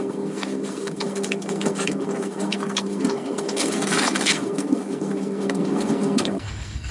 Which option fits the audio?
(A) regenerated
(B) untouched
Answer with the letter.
A